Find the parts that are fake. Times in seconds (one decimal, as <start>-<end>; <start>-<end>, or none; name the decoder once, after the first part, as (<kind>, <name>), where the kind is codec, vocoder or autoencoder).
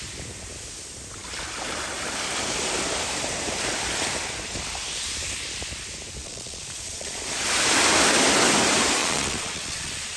6.2-7.2 (vocoder, Vocos); 9.0-10.2